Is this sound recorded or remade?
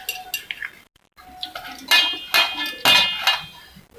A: recorded